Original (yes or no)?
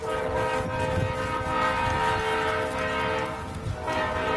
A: yes